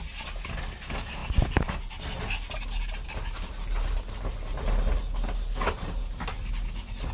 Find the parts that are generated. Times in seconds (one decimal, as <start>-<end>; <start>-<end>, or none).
none